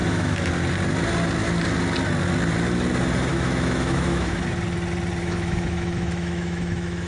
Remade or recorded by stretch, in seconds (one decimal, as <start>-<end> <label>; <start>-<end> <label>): 0.0-0.5 remade; 0.5-3.3 recorded; 3.3-4.4 remade; 4.4-5.2 recorded; 5.2-7.1 remade